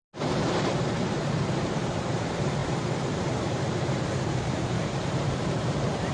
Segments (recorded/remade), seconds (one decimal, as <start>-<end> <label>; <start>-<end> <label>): 0.0-1.1 recorded; 1.1-6.1 remade